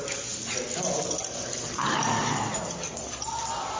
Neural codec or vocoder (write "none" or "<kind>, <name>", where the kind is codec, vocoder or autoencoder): none